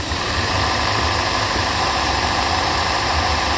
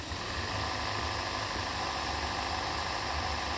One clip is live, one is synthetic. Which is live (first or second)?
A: second